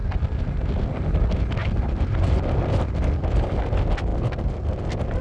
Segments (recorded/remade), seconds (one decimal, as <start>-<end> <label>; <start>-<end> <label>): 0.0-1.6 recorded; 1.6-2.6 remade; 2.6-5.2 recorded